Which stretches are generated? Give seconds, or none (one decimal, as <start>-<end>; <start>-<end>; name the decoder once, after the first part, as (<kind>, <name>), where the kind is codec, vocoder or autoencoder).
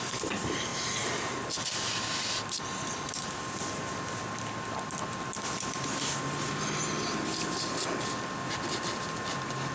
none